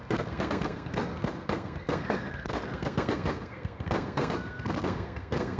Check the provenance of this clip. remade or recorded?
remade